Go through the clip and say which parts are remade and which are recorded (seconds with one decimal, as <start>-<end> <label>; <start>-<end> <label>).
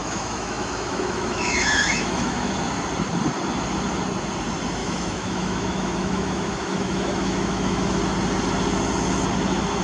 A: 0.0-2.5 remade; 2.5-4.8 recorded; 4.8-8.0 remade; 8.0-9.8 recorded